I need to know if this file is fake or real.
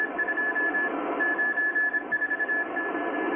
real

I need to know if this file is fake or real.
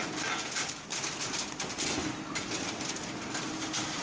fake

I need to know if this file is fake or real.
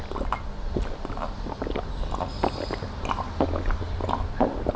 real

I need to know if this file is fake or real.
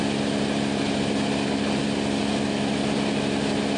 real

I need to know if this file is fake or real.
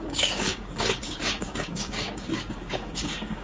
fake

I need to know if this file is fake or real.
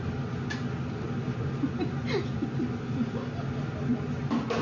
real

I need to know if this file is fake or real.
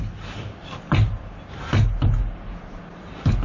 real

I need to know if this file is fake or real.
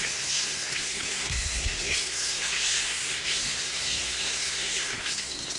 fake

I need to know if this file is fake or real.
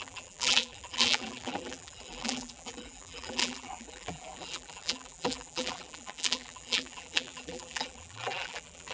fake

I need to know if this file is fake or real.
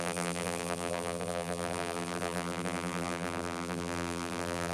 fake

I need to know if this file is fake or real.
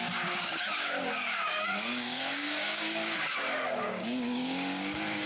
fake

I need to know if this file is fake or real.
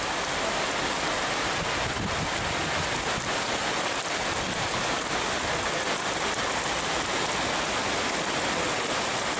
real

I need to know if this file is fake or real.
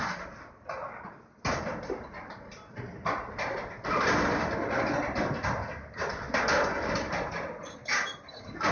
real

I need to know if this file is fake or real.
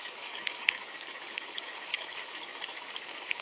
fake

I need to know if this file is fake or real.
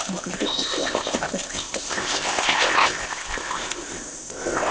fake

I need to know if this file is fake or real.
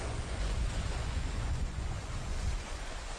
fake